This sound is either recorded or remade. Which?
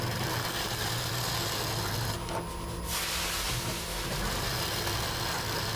recorded